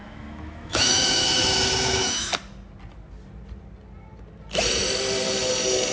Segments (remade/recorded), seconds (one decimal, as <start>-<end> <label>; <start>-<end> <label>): 0.0-2.3 remade; 2.3-5.9 recorded